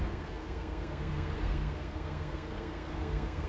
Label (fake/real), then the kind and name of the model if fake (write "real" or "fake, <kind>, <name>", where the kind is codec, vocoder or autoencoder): fake, codec, SNAC